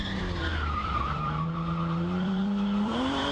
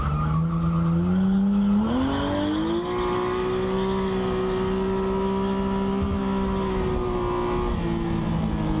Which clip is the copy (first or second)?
first